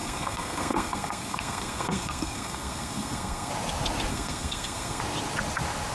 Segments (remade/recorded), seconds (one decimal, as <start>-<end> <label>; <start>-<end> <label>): 0.0-3.5 remade; 3.5-4.1 recorded; 4.1-5.0 remade; 5.0-5.9 recorded